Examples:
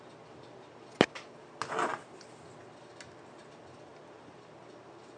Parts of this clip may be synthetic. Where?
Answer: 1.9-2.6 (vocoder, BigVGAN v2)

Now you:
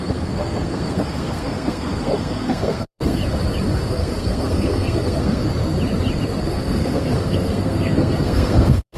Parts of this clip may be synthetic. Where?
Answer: 0.0-3.2 (codec, SNAC); 3.9-5.4; 6.4-9.0

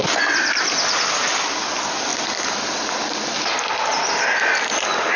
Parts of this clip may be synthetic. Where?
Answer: none

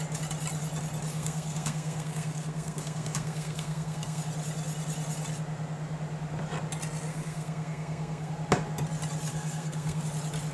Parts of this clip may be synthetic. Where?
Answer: 1.1-4.2 (codec, SNAC); 7.1-8.3; 9.3-10.0

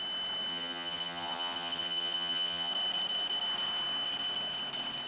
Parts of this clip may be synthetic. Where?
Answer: 0.5-2.7 (vocoder, HiFi-GAN)

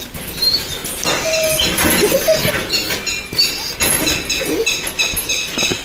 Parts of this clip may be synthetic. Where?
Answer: none